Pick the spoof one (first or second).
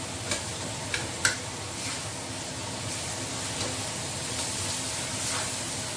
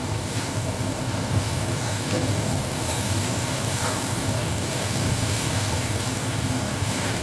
second